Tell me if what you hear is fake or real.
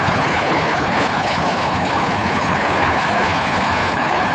fake